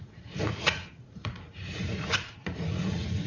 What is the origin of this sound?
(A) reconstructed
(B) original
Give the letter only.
A